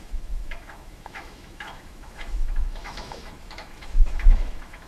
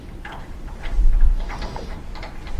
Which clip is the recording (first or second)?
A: second